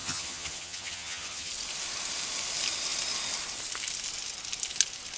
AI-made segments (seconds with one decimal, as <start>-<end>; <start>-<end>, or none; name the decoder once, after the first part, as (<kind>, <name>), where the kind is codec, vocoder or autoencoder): 0.0-1.5 (vocoder, HiFi-GAN)